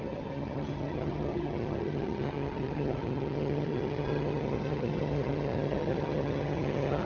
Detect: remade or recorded remade